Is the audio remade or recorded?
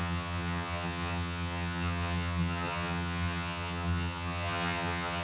remade